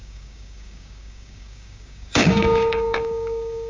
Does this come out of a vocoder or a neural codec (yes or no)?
yes